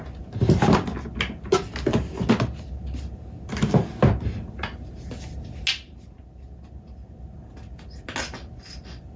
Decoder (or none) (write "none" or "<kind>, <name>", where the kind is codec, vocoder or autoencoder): none